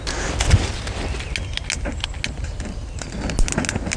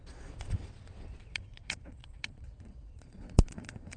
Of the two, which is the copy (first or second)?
second